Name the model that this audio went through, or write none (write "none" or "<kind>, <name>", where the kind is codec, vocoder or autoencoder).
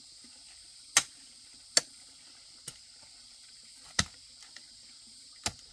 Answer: none